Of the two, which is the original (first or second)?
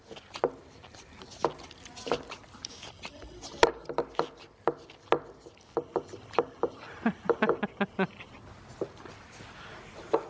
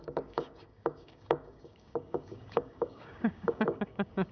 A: first